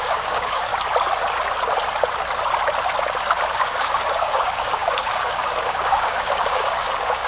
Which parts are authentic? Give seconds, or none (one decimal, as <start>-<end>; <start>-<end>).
0.7-3.5